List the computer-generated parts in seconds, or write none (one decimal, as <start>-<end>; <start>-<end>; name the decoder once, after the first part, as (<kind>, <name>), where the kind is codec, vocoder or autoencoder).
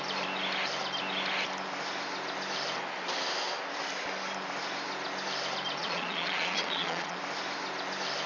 5.8-7.2 (vocoder, Vocos)